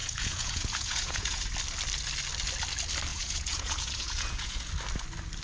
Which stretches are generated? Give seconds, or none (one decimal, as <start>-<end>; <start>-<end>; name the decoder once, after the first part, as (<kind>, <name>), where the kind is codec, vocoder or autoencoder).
0.0-1.4 (vocoder, Vocos); 3.1-4.7